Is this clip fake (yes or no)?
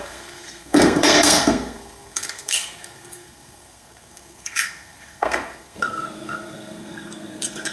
yes